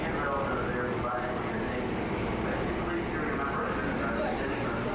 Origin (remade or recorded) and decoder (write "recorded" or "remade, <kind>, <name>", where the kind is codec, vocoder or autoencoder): recorded